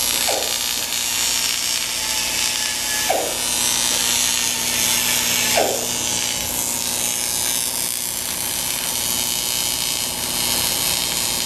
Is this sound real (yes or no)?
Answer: yes